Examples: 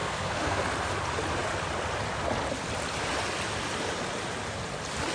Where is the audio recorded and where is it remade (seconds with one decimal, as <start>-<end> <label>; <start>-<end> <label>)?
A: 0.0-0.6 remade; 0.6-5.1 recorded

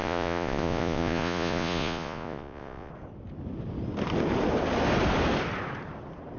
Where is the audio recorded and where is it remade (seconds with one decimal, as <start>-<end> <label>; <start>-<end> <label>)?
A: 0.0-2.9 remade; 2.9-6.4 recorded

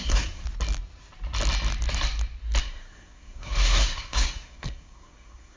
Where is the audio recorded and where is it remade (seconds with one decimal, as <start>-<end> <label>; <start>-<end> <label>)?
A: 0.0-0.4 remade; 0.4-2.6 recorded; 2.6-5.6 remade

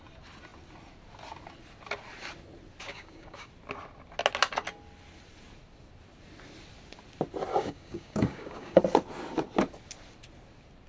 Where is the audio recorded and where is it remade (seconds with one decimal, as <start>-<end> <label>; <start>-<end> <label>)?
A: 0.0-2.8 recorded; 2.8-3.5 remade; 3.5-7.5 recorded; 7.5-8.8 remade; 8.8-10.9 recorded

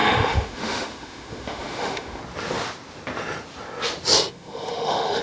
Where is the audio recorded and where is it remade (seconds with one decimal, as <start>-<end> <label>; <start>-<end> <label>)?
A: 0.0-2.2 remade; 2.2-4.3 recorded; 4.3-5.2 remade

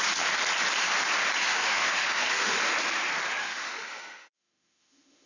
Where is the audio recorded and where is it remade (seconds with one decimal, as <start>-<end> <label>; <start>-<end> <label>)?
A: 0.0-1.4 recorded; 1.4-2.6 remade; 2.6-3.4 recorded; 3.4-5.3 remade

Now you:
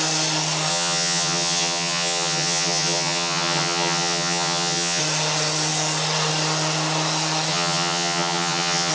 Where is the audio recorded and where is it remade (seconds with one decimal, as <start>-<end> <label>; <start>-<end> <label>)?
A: 0.0-0.7 recorded; 0.7-5.0 remade; 5.0-7.5 recorded; 7.5-8.9 remade

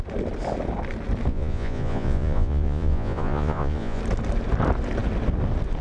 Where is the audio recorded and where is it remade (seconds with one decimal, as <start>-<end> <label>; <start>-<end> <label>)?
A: 0.0-1.3 recorded; 1.3-4.0 remade; 4.0-5.8 recorded